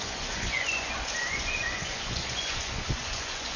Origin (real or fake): fake